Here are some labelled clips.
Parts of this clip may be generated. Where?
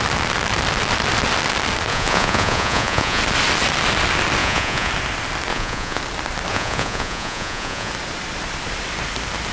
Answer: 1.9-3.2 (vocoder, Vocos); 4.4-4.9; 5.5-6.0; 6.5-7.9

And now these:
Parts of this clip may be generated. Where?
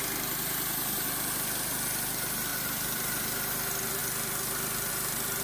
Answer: none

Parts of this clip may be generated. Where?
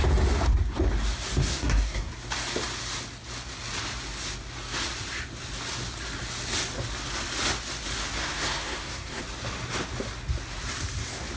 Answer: 1.4-2.1 (codec, SNAC); 8.2-9.2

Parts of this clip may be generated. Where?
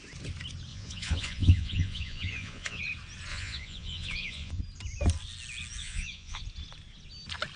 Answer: 0.7-2.8 (vocoder, Vocos); 3.3-4.6; 5.8-6.4